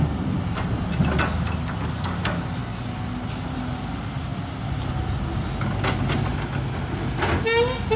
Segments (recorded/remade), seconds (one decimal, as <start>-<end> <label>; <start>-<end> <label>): 0.0-8.0 recorded